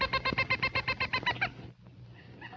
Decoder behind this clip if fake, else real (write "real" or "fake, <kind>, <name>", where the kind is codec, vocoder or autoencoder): real